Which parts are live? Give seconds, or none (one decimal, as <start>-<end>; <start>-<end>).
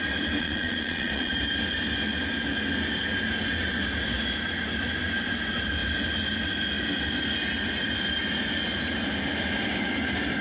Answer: 0.0-0.4; 1.3-10.4